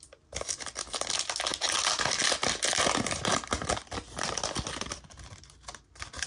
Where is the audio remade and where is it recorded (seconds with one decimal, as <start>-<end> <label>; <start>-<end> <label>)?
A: 0.0-6.3 recorded